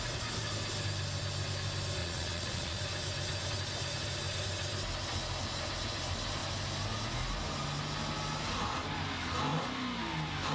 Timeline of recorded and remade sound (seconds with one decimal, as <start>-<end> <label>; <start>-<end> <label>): 0.0-2.0 recorded; 2.0-2.8 remade; 2.8-10.5 recorded